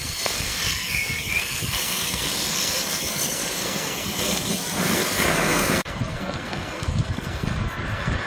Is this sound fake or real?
fake